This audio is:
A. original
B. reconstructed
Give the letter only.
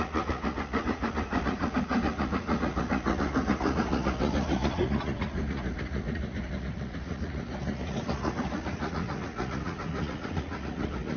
B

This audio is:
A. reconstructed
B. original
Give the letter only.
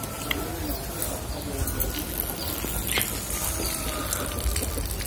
B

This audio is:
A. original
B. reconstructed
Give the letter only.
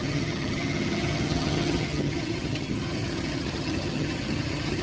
B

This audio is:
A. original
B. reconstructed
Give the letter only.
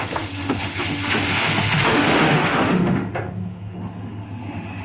B